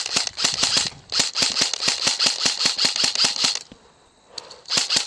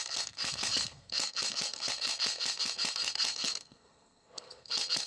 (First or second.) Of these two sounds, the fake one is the second